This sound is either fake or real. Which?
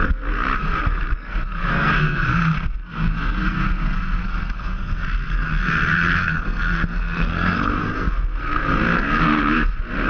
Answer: fake